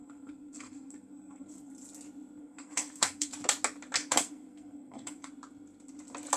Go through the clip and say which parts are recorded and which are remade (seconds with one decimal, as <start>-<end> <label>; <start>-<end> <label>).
0.0-1.7 remade; 1.7-2.4 recorded; 2.4-3.3 remade; 3.3-4.0 recorded; 4.0-5.3 remade; 5.3-6.4 recorded